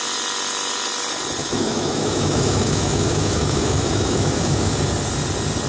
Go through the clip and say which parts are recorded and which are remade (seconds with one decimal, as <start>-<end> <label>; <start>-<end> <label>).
0.0-1.4 recorded; 1.4-4.8 remade; 4.8-5.7 recorded